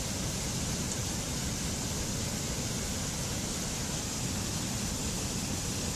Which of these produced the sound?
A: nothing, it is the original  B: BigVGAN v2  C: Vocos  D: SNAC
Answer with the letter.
A